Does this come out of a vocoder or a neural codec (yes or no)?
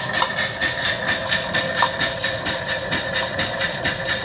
no